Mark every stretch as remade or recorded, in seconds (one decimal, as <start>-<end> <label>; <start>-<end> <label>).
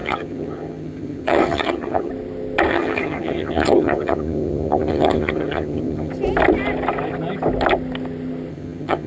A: 0.0-2.1 remade; 2.1-2.7 recorded; 2.7-6.1 remade; 6.1-8.5 recorded; 8.5-9.1 remade